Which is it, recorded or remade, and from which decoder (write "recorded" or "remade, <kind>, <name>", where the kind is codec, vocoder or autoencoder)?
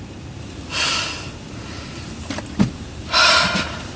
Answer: recorded